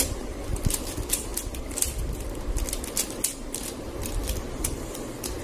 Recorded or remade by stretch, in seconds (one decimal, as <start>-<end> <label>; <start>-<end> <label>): 0.0-1.3 remade; 1.3-3.3 recorded; 3.3-5.4 remade